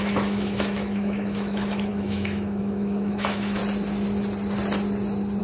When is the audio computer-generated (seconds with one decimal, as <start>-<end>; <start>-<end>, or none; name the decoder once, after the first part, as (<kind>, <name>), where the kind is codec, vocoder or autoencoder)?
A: 0.0-3.6 (autoencoder, DAC-VAE)